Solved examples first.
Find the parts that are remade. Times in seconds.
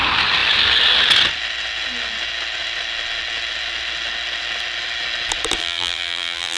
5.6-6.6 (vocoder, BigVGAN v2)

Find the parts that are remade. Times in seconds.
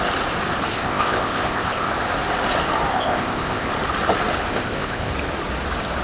0.7-1.9 (codec, ZipCodec); 2.9-3.7; 4.5-5.1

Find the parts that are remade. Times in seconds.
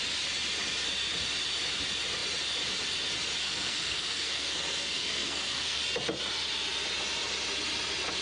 3.4-5.8 (codec, SNAC)